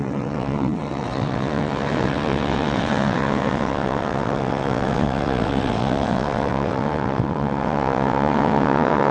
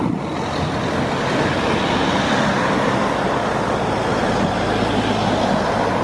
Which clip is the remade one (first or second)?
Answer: first